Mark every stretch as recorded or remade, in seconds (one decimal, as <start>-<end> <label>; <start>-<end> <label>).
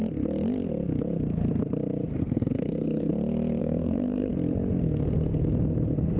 0.0-2.2 recorded; 2.2-3.1 remade; 3.1-3.6 recorded; 3.6-4.3 remade; 4.3-6.2 recorded